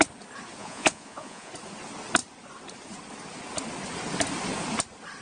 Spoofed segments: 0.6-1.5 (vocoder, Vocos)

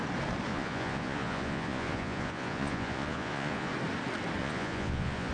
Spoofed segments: 0.5-3.7 (vocoder, Vocos); 4.4-5.3